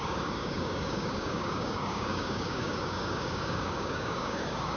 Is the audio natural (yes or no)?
no